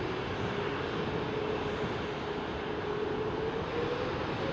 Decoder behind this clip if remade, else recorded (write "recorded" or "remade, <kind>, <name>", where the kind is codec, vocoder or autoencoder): recorded